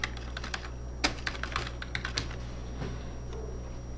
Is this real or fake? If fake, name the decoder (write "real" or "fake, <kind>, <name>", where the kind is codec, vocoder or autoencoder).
real